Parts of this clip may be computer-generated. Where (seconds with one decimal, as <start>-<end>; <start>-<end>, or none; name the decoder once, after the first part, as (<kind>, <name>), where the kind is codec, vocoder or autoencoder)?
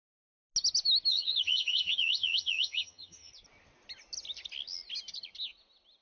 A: 1.1-3.3 (vocoder, HiFi-GAN)